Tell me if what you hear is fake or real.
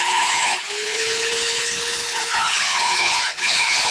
fake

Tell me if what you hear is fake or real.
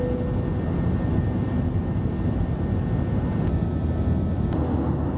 real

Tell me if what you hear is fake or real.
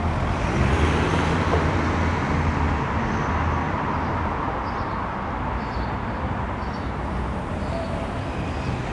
real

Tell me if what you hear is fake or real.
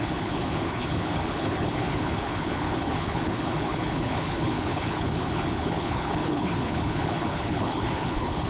fake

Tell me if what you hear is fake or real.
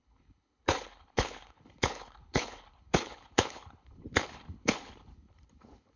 fake